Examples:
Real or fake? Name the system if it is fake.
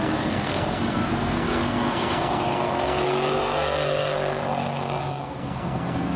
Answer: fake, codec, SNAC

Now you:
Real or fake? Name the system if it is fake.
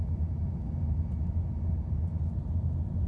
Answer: real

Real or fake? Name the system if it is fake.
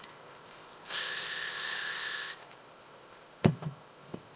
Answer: fake, codec, ZipCodec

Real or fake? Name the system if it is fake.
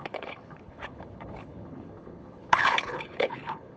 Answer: fake, codec, HILCodec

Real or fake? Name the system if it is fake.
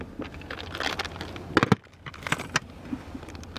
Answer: real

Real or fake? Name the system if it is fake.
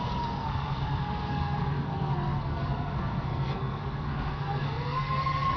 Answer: fake, codec, SNAC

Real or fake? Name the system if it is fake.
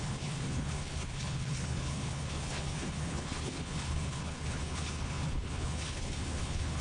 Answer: fake, codec, HILCodec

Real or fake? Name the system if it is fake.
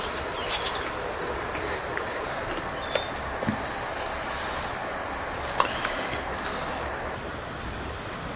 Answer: real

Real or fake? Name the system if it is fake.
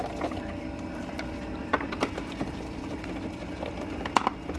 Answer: real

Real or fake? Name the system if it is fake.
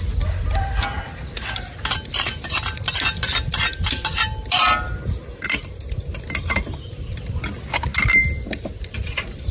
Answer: real